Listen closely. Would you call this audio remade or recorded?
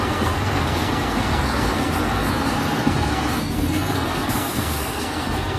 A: remade